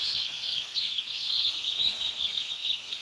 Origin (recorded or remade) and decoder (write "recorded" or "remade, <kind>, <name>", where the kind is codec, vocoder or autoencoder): remade, codec, SNAC